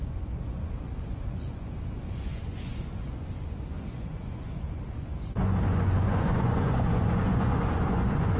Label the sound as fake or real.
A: fake